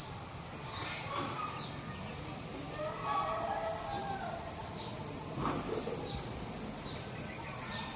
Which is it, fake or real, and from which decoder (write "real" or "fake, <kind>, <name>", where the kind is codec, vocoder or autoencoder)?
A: fake, vocoder, BigVGAN v2